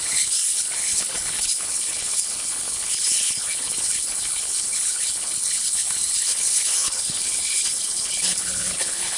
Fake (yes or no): yes